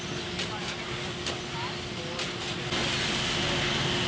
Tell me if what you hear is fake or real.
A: real